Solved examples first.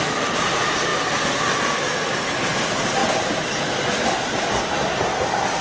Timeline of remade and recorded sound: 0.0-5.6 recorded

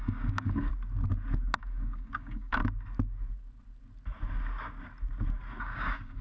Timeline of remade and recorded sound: 0.0-0.7 remade; 0.7-1.6 recorded; 1.6-2.6 remade; 2.6-5.6 recorded; 5.6-6.2 remade

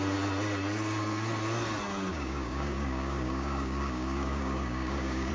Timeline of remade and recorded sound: 0.0-2.1 recorded; 2.1-5.3 remade

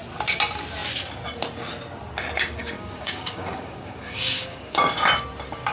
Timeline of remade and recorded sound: 0.0-2.6 recorded; 2.6-4.9 remade; 4.9-5.7 recorded